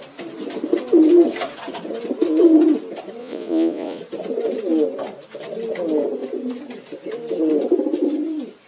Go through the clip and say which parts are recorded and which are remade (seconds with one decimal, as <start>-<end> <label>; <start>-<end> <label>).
0.0-3.2 recorded; 3.2-4.0 remade; 4.0-8.7 recorded